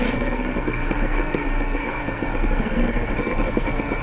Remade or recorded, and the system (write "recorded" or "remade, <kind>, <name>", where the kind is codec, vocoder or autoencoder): remade, codec, SNAC